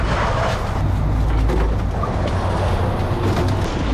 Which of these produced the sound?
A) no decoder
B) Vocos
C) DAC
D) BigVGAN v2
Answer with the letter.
A